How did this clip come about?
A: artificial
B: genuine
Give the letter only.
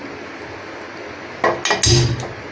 B